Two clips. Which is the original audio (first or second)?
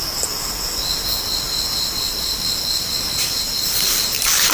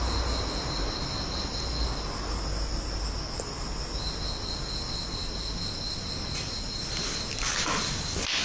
second